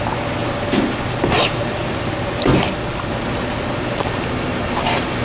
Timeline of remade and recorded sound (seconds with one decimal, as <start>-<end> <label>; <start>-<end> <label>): 0.0-0.4 remade; 0.4-1.2 recorded; 1.2-2.5 remade; 2.5-3.1 recorded; 3.1-5.2 remade